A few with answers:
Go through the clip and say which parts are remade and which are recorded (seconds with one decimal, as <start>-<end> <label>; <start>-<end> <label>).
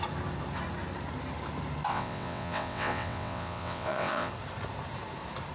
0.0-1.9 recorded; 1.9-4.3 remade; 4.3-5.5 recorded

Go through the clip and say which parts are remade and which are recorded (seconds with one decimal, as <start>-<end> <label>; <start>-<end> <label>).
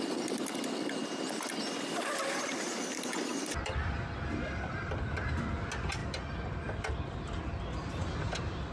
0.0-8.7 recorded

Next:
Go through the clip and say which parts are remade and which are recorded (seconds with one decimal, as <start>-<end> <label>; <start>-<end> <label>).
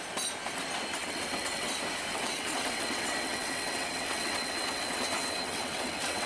0.0-1.0 recorded; 1.0-1.7 remade; 1.7-2.1 recorded; 2.1-6.3 remade